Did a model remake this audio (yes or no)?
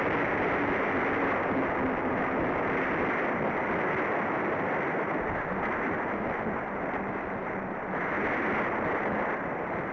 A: no